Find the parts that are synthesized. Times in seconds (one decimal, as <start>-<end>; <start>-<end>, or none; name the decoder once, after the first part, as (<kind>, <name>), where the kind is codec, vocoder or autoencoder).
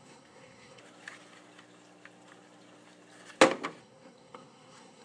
0.0-0.8 (codec, SNAC); 3.8-5.0